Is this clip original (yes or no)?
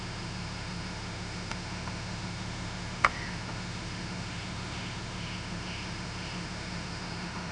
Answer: no